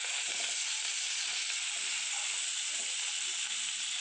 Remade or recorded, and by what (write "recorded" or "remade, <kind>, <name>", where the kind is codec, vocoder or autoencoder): recorded